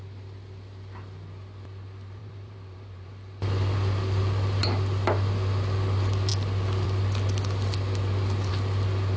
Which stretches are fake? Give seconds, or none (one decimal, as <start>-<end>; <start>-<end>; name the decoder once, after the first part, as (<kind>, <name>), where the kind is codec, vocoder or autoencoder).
2.2-3.1 (vocoder, BigVGAN v2)